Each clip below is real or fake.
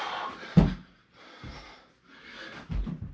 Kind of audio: real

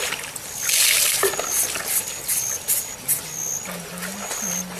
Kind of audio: real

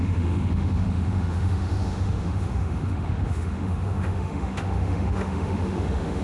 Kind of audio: fake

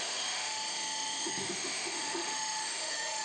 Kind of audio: fake